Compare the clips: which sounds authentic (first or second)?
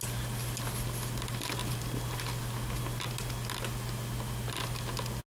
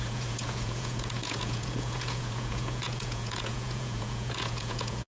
first